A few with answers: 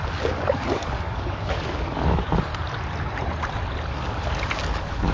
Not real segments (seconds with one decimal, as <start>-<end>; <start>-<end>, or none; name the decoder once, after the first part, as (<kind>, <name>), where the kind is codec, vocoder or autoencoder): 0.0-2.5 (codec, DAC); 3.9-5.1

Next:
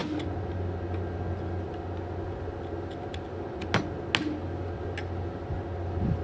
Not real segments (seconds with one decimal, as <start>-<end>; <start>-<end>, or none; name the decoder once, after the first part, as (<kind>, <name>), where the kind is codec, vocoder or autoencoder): none

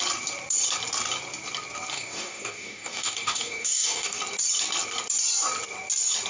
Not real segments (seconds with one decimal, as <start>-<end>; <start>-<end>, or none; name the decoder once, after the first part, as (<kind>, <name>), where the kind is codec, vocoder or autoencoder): 1.9-4.2 (codec, DAC)

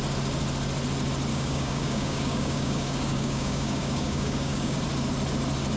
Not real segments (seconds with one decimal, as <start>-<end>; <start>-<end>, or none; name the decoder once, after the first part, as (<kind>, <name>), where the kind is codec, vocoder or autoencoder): 1.3-4.8 (codec, DAC)